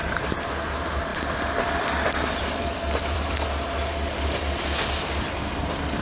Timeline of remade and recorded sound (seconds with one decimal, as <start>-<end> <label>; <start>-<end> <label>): 0.0-1.1 recorded; 1.1-3.5 remade; 3.5-6.0 recorded